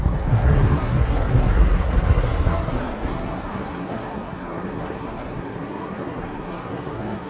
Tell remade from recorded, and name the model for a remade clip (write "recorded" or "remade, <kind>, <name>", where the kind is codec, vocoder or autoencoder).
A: remade, codec, SNAC